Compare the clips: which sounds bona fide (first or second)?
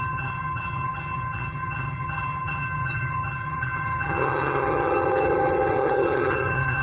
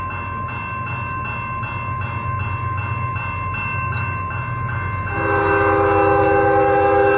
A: second